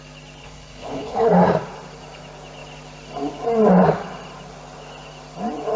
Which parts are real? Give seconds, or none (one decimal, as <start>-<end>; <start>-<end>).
0.0-0.4; 1.3-5.8